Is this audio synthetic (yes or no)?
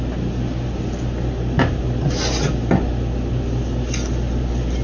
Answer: no